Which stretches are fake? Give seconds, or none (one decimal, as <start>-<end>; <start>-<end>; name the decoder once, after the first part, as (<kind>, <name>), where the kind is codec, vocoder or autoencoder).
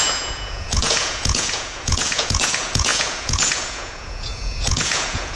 0.0-5.3 (vocoder, Vocos)